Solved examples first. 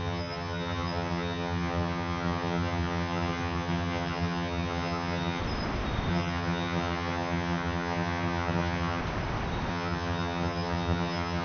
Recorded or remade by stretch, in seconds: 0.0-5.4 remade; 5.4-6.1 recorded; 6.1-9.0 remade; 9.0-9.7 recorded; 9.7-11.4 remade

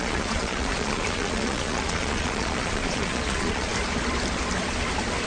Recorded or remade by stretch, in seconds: 0.0-3.7 remade; 3.7-5.3 recorded